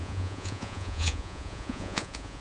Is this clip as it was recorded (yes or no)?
no